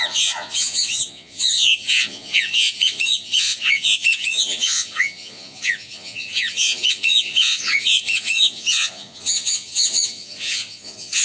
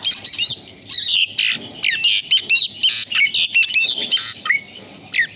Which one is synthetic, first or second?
first